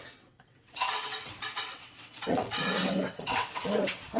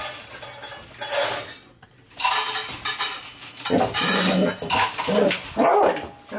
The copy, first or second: first